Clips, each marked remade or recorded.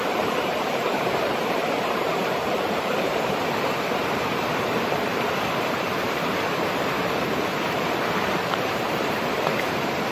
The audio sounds remade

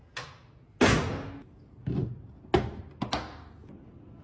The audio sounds recorded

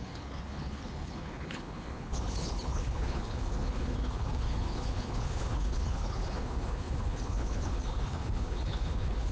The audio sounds remade